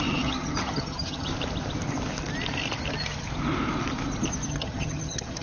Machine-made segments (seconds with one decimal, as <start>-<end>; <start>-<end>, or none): 0.0-1.3; 4.5-5.4